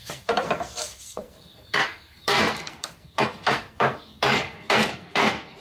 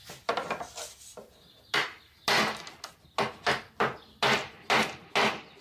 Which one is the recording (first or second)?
second